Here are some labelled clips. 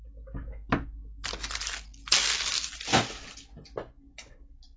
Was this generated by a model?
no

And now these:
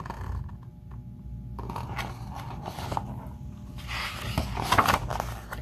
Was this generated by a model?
no